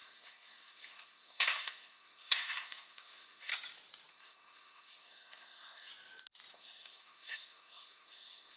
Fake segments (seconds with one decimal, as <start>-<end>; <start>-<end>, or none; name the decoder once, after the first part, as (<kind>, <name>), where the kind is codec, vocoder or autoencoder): 0.0-3.5 (codec, SNAC); 4.1-5.9; 6.5-8.6